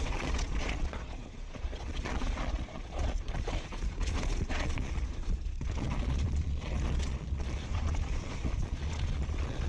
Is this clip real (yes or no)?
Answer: no